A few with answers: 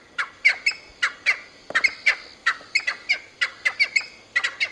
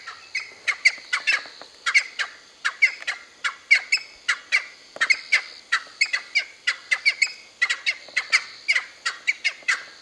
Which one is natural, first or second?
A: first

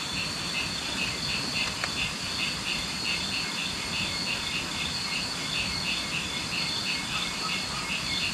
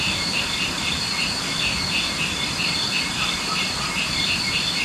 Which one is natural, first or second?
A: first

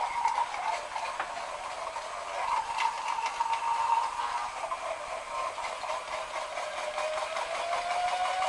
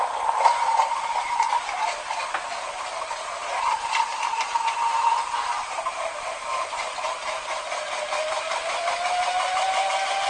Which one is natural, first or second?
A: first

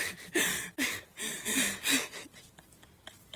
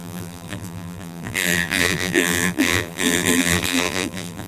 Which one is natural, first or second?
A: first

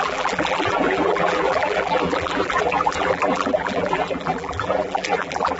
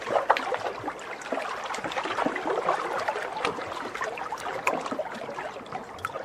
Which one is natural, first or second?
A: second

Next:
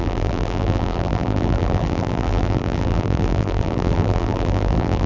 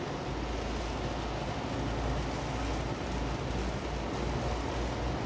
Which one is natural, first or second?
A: second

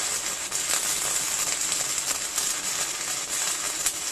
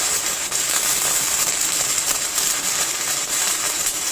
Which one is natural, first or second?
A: first